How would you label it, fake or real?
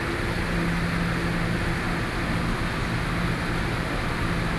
real